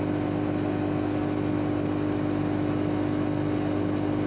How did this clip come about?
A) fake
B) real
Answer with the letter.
B